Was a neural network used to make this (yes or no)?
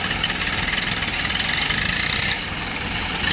no